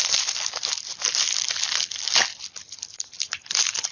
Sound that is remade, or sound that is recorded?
remade